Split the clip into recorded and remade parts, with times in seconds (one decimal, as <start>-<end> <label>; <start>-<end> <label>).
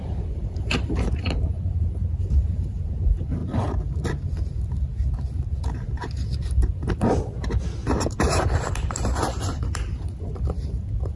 0.0-3.4 remade; 3.4-5.5 recorded; 5.5-11.2 remade